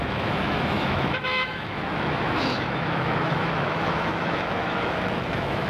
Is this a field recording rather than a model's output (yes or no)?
no